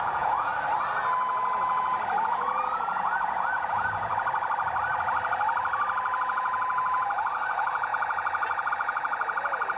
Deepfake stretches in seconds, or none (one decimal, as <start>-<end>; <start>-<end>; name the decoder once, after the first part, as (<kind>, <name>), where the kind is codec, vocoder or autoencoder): 0.0-0.5 (vocoder, Vocos); 2.2-4.1; 6.2-9.8